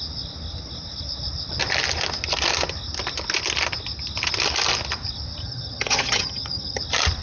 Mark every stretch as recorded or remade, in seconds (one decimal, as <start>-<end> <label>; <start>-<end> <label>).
0.0-5.4 recorded; 5.4-6.8 remade; 6.8-7.2 recorded